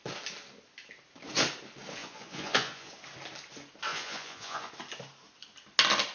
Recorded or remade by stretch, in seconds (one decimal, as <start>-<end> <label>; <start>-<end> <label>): 0.0-2.0 recorded; 2.0-2.9 remade; 2.9-3.9 recorded; 3.9-4.7 remade; 4.7-6.1 recorded